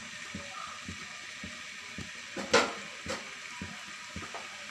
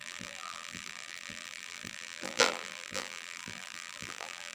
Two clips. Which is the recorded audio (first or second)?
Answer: first